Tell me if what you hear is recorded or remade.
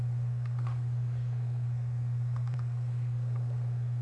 remade